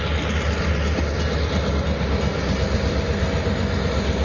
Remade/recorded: recorded